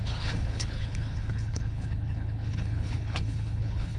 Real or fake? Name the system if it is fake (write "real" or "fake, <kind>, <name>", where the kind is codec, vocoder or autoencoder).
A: fake, codec, HILCodec